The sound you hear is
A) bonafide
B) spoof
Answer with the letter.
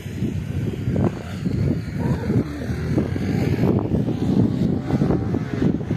A